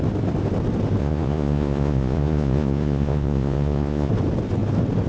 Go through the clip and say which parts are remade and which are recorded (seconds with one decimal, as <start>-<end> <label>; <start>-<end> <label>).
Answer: 0.0-1.0 recorded; 1.0-4.1 remade; 4.1-5.1 recorded